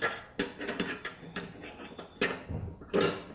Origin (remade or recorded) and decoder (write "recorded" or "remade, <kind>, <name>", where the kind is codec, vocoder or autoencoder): recorded